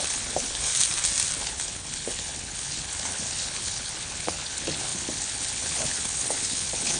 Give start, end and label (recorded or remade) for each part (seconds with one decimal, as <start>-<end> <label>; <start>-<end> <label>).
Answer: 0.0-0.7 remade; 0.7-1.4 recorded; 1.4-7.0 remade